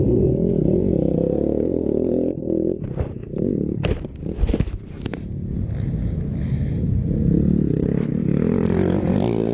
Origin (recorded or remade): recorded